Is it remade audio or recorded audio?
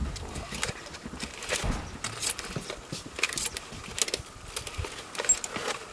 recorded